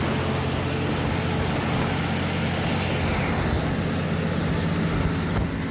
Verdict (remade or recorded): recorded